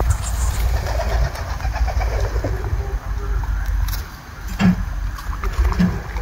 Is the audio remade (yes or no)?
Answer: no